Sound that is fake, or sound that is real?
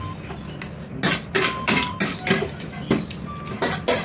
real